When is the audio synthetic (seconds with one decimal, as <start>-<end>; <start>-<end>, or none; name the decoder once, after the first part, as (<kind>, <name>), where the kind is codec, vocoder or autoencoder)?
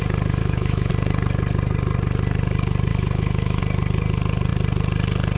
0.4-0.9 (autoencoder, DAC-VAE); 2.9-3.6